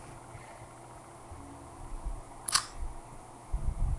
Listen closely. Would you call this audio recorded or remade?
recorded